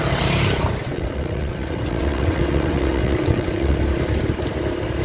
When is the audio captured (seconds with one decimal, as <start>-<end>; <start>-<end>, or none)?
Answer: 0.0-0.8; 3.8-5.0